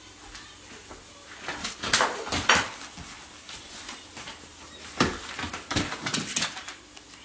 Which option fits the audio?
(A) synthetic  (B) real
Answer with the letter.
B